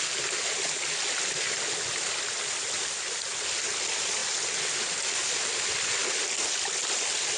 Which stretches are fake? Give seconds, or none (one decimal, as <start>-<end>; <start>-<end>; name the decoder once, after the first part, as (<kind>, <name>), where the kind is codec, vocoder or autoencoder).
none